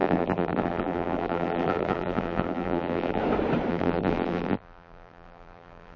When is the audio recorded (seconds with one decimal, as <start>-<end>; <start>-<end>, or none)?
3.2-3.7